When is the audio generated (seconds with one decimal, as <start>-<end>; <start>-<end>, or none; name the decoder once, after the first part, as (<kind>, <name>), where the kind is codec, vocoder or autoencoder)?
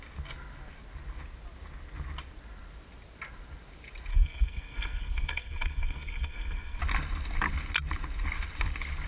4.1-6.8 (codec, SNAC)